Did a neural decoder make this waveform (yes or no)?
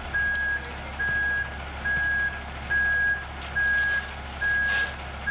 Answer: no